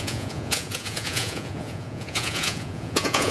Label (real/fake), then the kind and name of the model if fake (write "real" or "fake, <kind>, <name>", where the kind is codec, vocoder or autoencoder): fake, vocoder, Vocos